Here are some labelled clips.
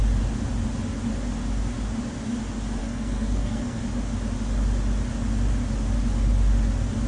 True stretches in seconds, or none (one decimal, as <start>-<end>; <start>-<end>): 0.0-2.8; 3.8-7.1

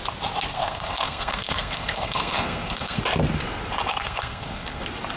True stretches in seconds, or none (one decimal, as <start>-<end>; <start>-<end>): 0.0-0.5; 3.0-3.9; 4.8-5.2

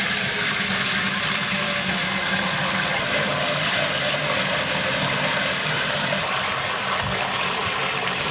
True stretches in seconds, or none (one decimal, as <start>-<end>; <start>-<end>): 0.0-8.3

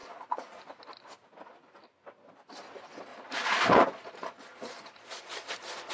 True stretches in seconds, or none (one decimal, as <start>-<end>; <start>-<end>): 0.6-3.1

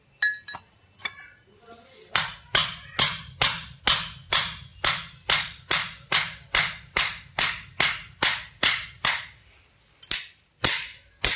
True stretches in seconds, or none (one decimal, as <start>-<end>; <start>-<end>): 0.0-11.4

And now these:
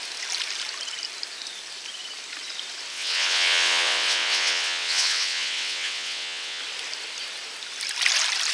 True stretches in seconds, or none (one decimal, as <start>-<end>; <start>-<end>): 0.0-2.9; 6.6-8.5

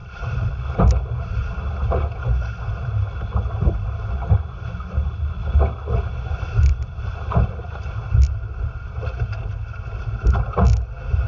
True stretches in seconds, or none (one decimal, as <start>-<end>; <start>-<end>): 0.5-6.7; 8.1-11.3

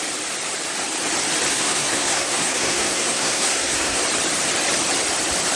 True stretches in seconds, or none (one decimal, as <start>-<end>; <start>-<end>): 0.0-1.5; 4.0-5.6